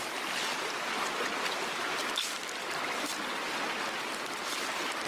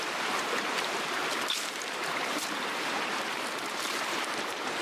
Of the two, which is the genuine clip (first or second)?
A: first